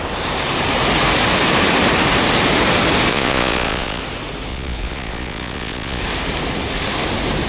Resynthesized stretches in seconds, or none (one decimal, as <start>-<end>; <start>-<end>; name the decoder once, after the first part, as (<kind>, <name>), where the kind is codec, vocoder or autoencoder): 3.1-4.0 (vocoder, Vocos); 4.5-6.0